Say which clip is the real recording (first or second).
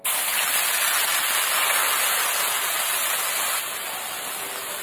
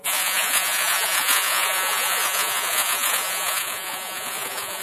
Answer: first